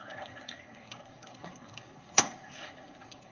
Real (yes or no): no